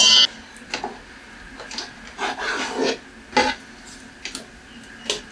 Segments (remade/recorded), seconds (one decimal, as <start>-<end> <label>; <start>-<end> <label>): 0.0-5.3 recorded